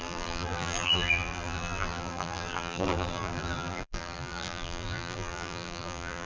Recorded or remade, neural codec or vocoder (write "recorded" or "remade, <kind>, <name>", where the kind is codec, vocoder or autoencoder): remade, vocoder, BigVGAN v2